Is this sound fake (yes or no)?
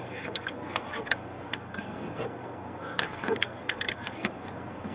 yes